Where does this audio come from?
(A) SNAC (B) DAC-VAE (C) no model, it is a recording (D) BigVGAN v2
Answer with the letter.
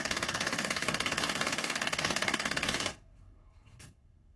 A